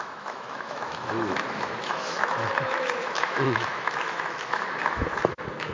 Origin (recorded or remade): remade